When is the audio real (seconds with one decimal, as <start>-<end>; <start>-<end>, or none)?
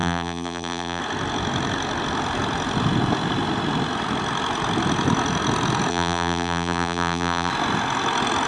1.0-5.9; 7.5-8.5